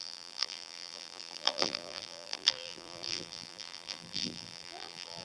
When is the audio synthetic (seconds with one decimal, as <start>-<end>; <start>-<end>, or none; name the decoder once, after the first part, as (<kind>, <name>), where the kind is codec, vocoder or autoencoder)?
0.0-5.2 (vocoder, BigVGAN v2)